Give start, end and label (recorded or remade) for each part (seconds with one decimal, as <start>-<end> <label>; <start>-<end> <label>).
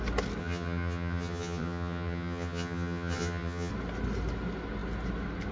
0.0-0.4 recorded; 0.4-3.7 remade; 3.7-5.5 recorded